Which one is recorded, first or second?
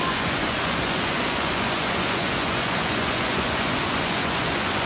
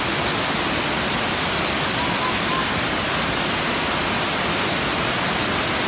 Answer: second